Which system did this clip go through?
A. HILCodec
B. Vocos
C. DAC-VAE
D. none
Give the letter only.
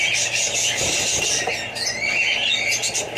D